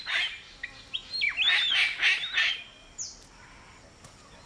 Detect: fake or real real